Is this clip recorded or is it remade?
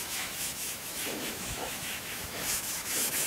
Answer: remade